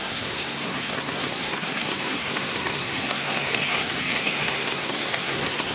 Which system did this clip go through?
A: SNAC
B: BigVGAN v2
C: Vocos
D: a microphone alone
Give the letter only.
A